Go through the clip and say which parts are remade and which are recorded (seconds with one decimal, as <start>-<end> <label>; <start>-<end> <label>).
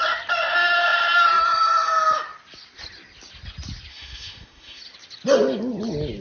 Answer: 0.0-3.9 recorded; 3.9-4.8 remade; 4.8-6.2 recorded